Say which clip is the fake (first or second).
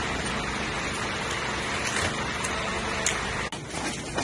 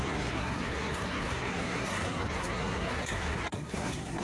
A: second